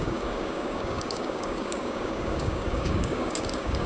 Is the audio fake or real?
fake